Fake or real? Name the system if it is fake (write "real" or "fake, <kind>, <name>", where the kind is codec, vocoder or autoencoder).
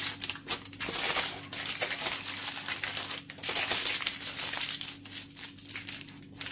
real